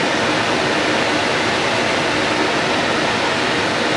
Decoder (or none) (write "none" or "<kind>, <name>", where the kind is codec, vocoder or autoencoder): none